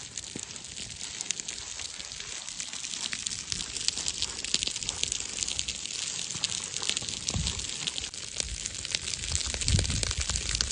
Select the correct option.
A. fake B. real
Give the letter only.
B